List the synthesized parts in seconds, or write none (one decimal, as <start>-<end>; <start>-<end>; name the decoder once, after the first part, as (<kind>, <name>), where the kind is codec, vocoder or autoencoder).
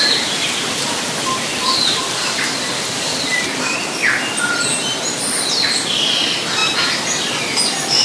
none